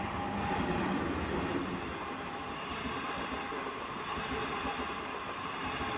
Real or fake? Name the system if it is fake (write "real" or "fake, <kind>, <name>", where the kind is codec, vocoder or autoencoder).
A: real